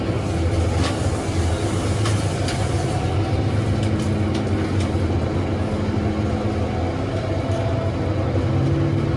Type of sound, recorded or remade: recorded